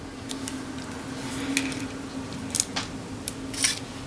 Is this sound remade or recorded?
recorded